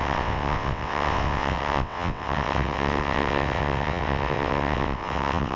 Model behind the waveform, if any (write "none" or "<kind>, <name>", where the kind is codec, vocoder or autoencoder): vocoder, WaveNeXt